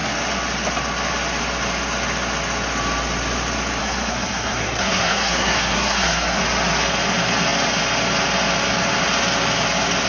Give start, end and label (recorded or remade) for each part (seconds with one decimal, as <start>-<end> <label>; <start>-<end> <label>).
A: 0.0-3.8 recorded; 3.8-6.4 remade; 6.4-10.1 recorded